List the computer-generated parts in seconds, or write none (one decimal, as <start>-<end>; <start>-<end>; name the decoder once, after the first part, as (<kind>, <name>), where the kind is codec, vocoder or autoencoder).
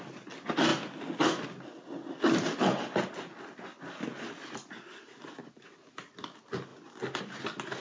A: none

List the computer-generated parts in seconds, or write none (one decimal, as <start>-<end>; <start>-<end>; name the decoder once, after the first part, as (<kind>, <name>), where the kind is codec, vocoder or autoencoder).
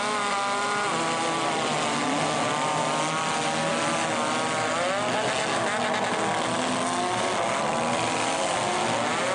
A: none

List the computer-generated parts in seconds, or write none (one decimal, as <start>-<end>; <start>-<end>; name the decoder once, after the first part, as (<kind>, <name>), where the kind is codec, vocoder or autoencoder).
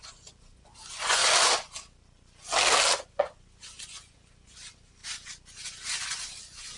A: 0.0-1.2 (vocoder, Vocos); 3.1-5.0; 6.0-6.8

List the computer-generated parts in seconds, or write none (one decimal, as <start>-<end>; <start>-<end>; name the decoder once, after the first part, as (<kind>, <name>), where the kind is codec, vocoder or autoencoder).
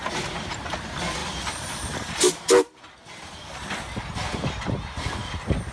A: none